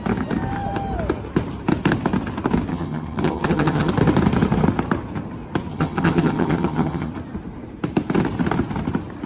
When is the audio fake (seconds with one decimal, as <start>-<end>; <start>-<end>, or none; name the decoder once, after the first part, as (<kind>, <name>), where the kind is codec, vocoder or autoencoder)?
2.7-3.9 (vocoder, HiFi-GAN); 5.7-7.1